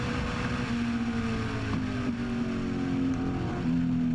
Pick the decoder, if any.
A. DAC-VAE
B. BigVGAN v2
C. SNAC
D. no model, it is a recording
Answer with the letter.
D